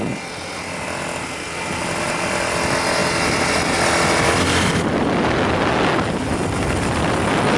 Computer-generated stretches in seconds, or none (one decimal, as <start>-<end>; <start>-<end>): none